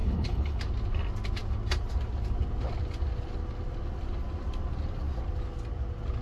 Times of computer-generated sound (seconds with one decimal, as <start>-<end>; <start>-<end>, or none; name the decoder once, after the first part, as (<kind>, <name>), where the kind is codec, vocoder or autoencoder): 0.0-0.6 (codec, HILCodec)